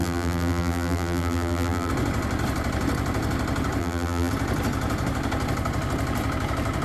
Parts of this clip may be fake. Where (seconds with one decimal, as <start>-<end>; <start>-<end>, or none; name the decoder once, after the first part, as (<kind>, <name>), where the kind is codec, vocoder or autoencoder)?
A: 0.0-1.9 (vocoder, BigVGAN v2); 3.8-4.3